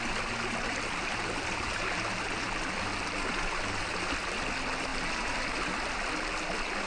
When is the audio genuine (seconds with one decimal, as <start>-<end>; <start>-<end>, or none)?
0.0-6.9